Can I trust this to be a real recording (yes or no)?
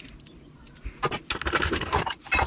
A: yes